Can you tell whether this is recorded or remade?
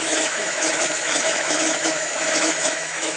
remade